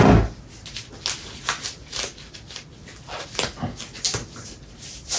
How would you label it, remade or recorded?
recorded